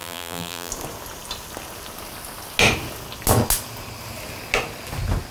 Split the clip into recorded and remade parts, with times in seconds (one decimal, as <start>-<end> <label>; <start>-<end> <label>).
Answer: 0.0-0.7 remade; 0.7-5.3 recorded